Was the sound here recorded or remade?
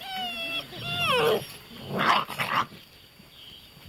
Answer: recorded